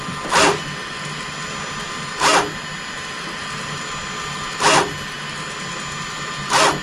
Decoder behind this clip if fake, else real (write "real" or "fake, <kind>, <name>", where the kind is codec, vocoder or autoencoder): real